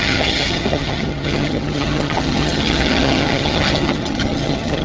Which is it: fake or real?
fake